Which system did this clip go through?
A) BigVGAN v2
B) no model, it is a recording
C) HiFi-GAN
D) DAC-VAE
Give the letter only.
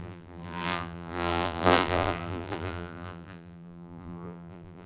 A